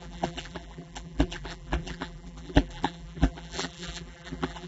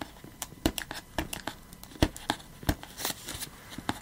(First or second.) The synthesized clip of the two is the first